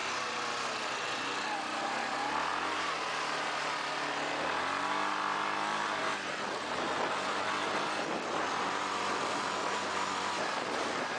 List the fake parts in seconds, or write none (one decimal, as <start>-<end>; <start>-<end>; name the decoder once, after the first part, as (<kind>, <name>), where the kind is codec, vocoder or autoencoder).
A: 1.9-2.5 (vocoder, BigVGAN v2); 5.1-11.2